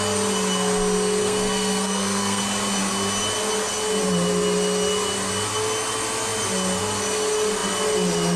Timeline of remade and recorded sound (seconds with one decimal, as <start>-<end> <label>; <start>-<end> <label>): 0.0-1.2 recorded; 1.2-2.4 remade; 2.4-8.4 recorded